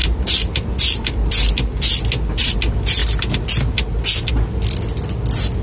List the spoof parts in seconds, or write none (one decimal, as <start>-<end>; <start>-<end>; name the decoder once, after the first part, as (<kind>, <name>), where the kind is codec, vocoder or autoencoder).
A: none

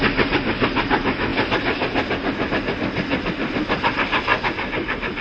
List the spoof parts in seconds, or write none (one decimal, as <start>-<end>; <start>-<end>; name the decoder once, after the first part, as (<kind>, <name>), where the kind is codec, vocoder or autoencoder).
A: none

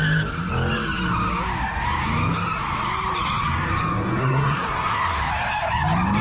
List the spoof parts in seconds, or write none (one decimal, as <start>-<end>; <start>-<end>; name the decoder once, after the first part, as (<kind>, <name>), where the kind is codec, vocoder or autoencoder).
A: 4.2-5.2 (codec, SNAC)